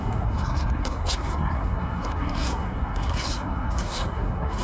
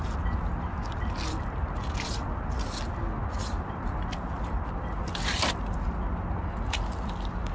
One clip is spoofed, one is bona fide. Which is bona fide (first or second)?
second